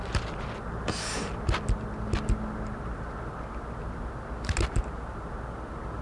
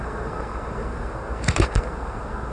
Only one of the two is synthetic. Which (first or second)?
second